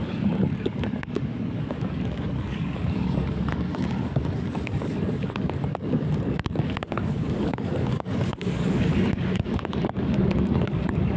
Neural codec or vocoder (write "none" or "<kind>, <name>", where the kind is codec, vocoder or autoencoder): codec, DAC